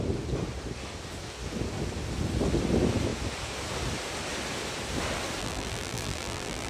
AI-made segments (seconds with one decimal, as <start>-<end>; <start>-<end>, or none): 5.4-6.7